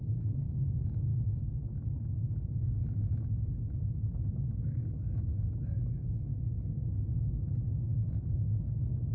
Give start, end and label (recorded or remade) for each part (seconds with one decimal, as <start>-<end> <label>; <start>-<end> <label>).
0.0-1.1 remade; 1.1-4.3 recorded; 4.3-6.3 remade; 6.3-7.9 recorded; 7.9-9.1 remade